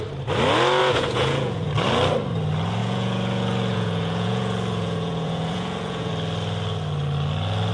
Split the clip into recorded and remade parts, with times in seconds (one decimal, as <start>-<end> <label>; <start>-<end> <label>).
0.0-0.8 recorded; 0.8-1.7 remade; 1.7-2.8 recorded; 2.8-6.1 remade; 6.1-7.7 recorded